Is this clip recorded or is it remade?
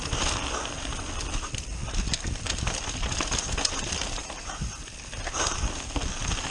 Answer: recorded